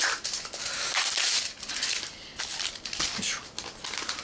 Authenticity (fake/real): real